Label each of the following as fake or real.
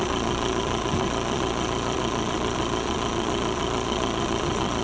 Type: fake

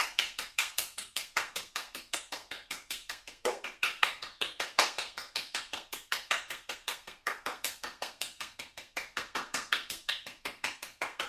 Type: fake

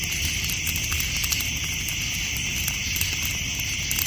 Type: real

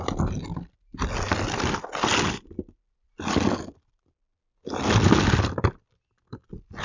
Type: real